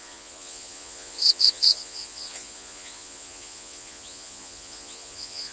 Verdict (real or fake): fake